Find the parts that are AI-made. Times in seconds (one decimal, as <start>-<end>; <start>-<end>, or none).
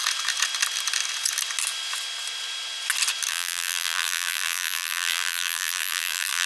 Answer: 3.3-6.5